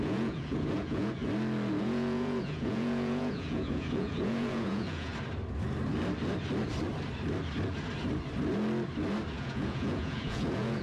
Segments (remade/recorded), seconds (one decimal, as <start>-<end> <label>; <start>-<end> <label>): 0.0-1.2 remade; 1.2-1.8 recorded; 1.8-5.1 remade; 5.1-9.3 recorded; 9.3-10.8 remade